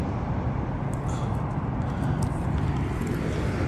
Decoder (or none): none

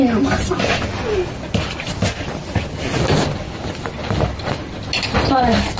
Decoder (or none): none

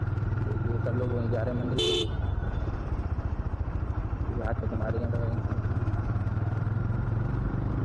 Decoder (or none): vocoder, BigVGAN v2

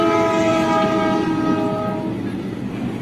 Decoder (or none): none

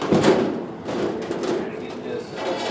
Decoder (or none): none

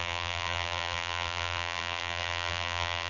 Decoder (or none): vocoder, BigVGAN v2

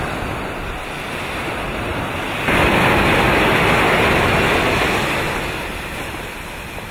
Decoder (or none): none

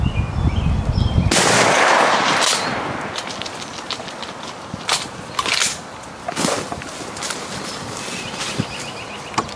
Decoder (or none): none